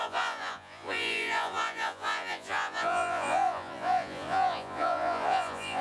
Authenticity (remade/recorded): remade